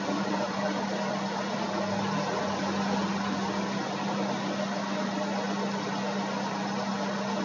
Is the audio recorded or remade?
recorded